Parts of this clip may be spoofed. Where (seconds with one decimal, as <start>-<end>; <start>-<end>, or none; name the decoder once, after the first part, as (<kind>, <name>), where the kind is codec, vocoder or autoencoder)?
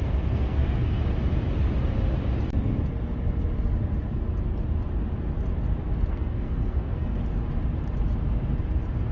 0.0-1.0 (codec, SNAC); 6.1-7.2